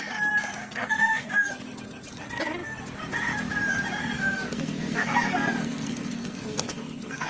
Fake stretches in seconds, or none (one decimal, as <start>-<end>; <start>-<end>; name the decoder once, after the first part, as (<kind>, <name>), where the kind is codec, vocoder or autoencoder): 0.6-1.5 (codec, SNAC); 4.0-7.3